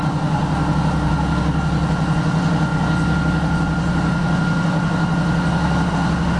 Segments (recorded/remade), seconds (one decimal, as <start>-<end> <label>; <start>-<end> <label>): 0.0-6.4 recorded